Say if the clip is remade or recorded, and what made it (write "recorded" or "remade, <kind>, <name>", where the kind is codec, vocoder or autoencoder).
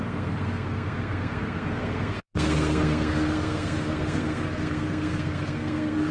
remade, codec, SNAC